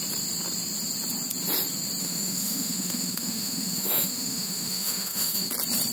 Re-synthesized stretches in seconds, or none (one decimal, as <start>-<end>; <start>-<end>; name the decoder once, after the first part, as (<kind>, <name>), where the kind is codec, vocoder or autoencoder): 2.0-5.5 (autoencoder, DAC-VAE)